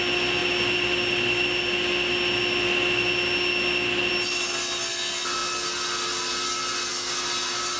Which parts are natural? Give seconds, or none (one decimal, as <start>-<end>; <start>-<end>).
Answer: 0.0-7.8